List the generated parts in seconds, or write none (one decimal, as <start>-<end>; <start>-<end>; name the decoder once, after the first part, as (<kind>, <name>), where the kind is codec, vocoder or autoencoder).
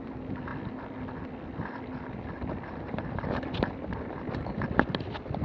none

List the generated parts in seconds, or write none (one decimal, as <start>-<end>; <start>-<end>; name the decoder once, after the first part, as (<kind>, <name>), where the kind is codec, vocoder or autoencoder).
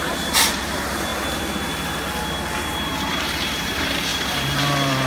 0.0-1.1 (vocoder, BigVGAN v2); 2.5-5.1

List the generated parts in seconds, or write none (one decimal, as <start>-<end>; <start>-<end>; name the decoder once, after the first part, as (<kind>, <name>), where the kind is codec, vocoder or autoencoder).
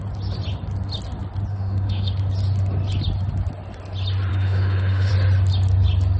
1.5-2.1 (autoencoder, DAC-VAE); 4.3-5.1